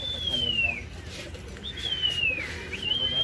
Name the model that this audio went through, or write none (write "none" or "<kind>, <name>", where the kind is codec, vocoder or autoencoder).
none